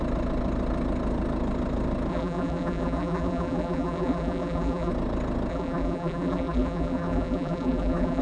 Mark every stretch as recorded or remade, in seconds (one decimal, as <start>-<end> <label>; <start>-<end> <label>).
0.0-2.1 recorded; 2.1-4.9 remade; 4.9-5.5 recorded; 5.5-8.2 remade